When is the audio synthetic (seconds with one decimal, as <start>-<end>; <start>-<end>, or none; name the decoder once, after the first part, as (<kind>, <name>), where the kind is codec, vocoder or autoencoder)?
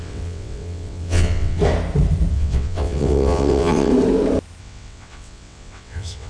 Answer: 0.0-1.6 (vocoder, WaveNeXt); 2.3-3.9; 4.6-6.3